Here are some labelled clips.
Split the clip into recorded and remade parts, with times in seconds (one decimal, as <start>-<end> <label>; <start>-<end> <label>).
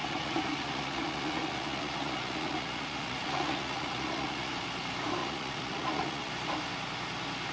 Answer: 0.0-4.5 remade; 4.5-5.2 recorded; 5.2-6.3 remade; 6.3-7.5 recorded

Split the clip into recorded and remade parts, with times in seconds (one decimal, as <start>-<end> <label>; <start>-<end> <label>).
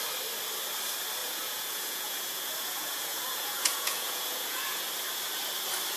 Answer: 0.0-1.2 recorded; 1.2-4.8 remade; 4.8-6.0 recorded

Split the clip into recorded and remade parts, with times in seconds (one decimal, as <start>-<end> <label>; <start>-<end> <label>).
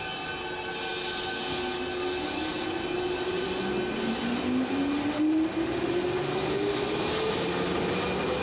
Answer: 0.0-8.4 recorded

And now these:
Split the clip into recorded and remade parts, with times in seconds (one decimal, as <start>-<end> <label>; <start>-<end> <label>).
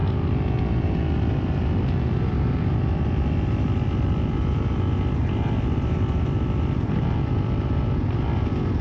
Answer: 0.0-8.8 recorded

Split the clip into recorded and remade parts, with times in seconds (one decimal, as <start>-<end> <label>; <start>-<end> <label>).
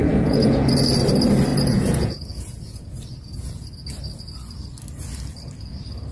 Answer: 0.0-0.7 remade; 0.7-1.5 recorded; 1.5-3.5 remade; 3.5-6.1 recorded